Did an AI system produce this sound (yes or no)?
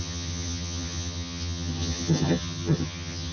yes